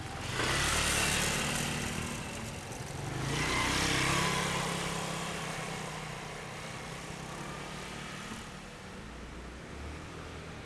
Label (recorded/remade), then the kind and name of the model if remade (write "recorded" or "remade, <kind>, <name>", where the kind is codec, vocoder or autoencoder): recorded